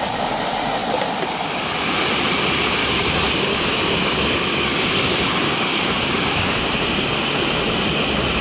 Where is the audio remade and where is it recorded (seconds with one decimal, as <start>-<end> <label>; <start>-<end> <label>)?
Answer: 0.0-2.8 recorded; 2.8-6.6 remade; 6.6-8.4 recorded